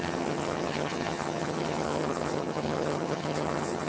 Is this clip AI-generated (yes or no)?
yes